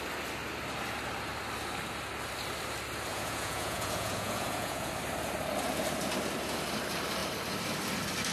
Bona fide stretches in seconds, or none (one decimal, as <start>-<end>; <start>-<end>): 0.0-3.1; 4.9-8.3